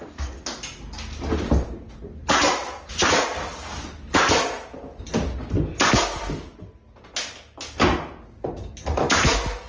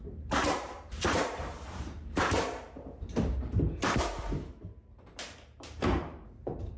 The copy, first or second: second